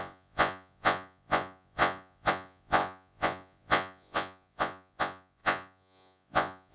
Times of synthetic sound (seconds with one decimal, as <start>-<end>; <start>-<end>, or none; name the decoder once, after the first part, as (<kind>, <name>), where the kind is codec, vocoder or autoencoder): 0.0-6.7 (vocoder, Vocos)